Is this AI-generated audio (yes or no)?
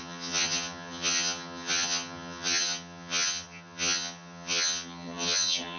yes